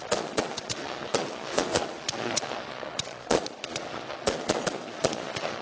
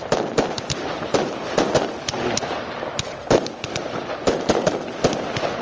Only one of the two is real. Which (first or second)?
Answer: second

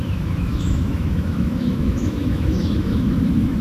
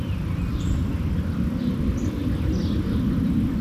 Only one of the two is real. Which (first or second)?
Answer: second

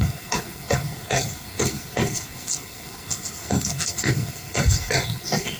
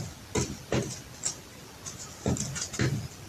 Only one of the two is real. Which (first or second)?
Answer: second